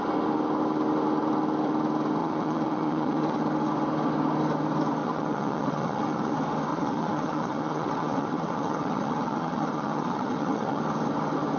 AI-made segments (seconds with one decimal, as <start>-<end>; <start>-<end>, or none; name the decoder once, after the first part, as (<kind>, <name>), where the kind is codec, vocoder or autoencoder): 2.2-3.4 (vocoder, Vocos); 5.0-6.3; 6.7-10.8